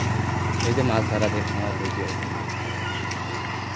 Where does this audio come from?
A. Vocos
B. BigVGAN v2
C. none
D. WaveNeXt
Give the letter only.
C